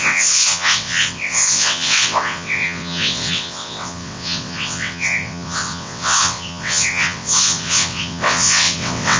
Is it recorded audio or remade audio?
remade